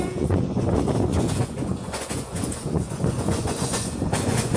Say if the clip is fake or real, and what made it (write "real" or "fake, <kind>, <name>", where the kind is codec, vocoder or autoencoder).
fake, vocoder, Vocos